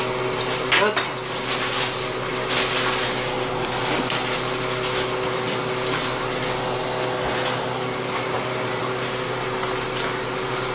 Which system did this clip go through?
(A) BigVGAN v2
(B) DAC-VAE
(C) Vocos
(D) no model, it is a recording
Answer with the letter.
D